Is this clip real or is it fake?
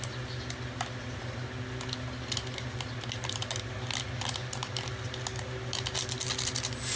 real